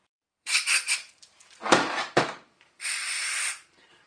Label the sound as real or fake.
fake